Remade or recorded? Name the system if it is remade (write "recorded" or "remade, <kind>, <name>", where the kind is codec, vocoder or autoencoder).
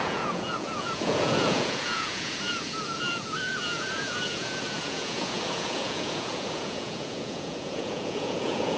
remade, vocoder, Vocos